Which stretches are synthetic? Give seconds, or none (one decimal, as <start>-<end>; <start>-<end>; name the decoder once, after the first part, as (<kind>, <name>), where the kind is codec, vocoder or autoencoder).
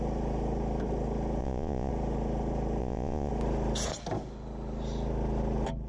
1.4-1.9 (vocoder, Vocos); 2.8-3.3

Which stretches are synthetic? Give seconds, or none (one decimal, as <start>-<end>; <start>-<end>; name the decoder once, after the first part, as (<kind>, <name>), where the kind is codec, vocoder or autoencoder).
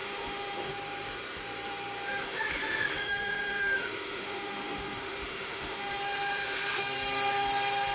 0.0-0.7 (autoencoder, DAC-VAE); 2.1-6.8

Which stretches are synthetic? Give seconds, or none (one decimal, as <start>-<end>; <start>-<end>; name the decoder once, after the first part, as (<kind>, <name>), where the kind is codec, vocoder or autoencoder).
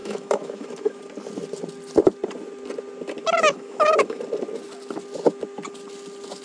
0.0-1.0 (autoencoder, DAC-VAE); 3.2-4.2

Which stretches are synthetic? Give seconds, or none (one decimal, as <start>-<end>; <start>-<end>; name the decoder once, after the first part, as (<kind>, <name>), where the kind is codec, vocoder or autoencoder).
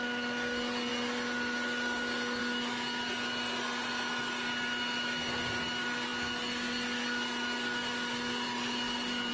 none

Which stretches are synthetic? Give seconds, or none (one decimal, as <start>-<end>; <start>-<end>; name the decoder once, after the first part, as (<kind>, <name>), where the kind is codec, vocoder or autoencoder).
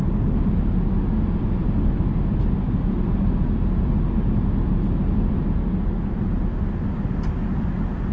none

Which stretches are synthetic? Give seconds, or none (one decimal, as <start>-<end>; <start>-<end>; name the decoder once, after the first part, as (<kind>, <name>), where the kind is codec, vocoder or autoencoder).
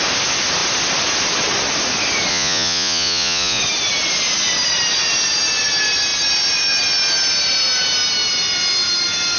2.3-3.6 (vocoder, Vocos)